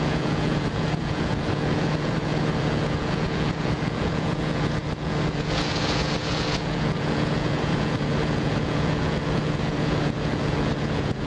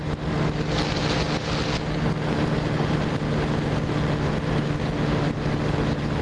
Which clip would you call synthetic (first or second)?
first